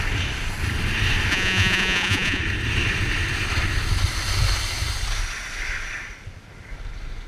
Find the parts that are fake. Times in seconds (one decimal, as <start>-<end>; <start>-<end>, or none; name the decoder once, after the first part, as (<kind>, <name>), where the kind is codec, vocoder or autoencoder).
1.3-2.4 (vocoder, Vocos)